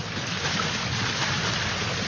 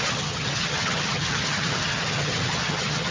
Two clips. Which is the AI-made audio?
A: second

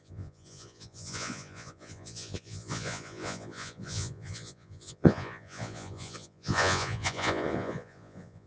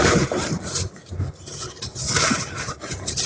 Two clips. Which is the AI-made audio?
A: first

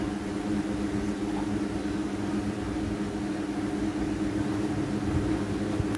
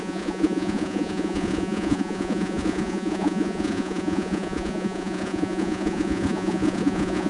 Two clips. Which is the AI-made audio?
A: second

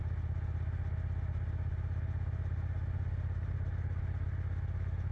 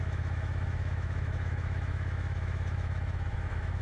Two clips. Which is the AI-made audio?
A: second